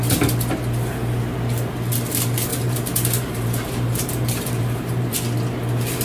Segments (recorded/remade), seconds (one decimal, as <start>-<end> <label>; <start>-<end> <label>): 0.0-2.5 recorded; 2.5-5.1 remade; 5.1-6.0 recorded